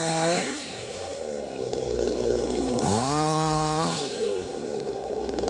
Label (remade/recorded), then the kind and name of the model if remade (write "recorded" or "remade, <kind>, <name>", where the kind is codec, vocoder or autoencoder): remade, codec, SNAC